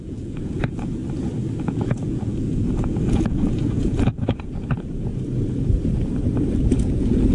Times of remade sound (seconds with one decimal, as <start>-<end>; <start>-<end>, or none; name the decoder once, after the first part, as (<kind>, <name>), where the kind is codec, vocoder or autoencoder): 0.0-1.0 (vocoder, Vocos); 1.6-5.1; 6.6-7.3